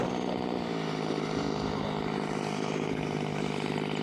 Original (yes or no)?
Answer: yes